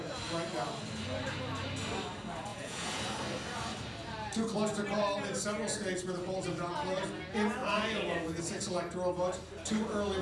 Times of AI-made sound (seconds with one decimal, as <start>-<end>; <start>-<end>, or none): 2.5-3.0; 7.6-8.4